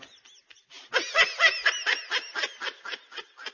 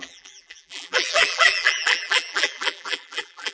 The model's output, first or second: second